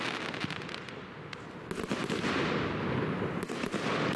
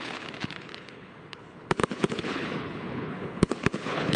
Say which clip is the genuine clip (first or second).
first